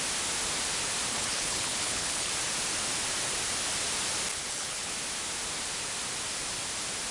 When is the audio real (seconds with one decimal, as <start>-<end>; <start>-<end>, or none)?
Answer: 0.0-1.1; 2.3-4.3; 4.9-7.1